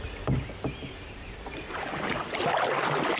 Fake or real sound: real